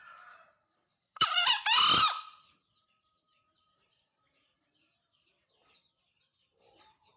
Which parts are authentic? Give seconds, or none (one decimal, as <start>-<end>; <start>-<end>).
1.4-2.8